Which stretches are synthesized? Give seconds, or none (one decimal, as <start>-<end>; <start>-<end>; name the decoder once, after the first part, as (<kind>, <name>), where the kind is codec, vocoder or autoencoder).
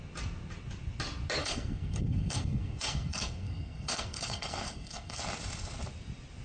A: 1.4-5.2 (codec, SNAC)